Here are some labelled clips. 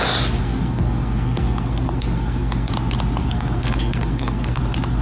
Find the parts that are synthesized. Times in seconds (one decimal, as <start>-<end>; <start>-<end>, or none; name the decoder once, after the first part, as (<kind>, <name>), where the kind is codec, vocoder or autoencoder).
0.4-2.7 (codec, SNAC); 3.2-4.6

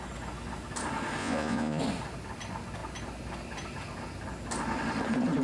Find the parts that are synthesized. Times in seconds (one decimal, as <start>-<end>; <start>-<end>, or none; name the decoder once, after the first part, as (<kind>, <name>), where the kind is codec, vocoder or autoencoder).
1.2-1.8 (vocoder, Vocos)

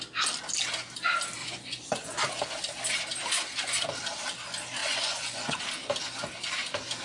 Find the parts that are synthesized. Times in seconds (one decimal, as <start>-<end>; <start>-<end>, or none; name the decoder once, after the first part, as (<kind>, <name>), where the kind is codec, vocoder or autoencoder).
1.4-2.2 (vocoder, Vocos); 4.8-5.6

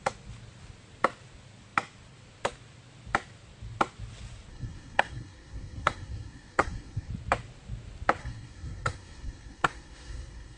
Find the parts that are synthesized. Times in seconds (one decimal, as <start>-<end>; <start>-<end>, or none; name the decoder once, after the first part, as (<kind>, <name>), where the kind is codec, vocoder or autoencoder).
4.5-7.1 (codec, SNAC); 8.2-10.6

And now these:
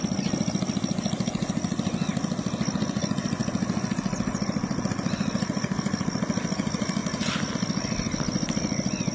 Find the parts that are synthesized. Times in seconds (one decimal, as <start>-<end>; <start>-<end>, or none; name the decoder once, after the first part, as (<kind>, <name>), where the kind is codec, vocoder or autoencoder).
none

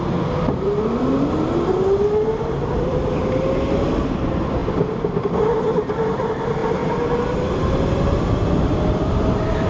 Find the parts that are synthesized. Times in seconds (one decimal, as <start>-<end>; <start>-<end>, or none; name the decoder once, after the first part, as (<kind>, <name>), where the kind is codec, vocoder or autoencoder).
none

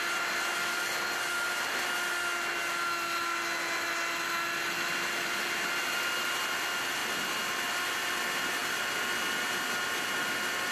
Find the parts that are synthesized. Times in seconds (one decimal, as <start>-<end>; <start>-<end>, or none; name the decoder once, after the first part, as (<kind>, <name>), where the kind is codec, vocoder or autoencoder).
none